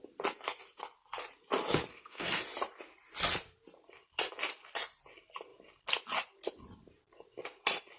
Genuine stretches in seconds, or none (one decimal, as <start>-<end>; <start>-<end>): 0.0-1.9; 2.4-8.0